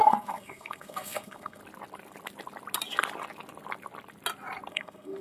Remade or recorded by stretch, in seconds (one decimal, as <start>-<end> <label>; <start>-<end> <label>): 0.0-1.6 remade; 1.6-4.7 recorded; 4.7-5.2 remade